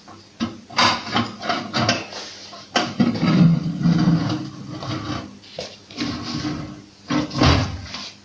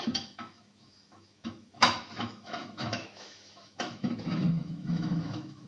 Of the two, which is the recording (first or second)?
first